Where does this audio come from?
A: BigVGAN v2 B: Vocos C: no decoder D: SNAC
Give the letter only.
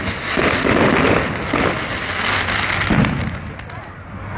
C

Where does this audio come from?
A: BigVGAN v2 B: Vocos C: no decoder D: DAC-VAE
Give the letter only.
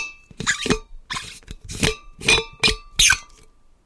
C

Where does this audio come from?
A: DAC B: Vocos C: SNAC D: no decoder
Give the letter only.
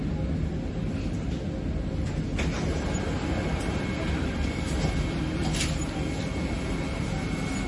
D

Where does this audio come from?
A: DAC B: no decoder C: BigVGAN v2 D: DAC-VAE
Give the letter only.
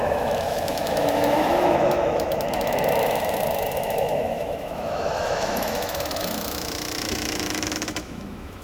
D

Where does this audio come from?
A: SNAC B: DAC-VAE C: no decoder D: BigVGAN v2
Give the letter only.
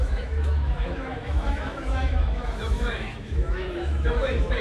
B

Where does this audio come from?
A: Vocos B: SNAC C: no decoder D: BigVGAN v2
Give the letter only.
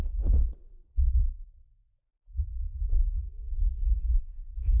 A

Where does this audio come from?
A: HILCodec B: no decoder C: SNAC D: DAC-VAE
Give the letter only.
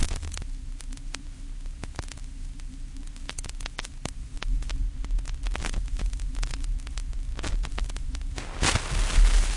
B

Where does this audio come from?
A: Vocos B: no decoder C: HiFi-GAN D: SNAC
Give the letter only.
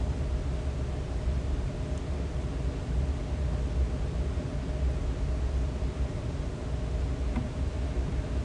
B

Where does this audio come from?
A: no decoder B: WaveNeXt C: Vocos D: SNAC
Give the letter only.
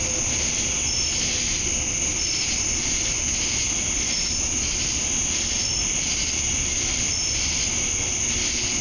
A